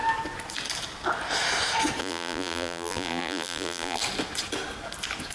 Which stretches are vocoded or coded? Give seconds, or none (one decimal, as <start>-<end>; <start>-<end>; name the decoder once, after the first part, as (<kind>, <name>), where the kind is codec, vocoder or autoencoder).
2.0-4.0 (vocoder, BigVGAN v2)